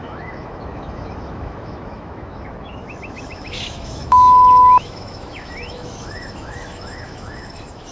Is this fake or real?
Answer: fake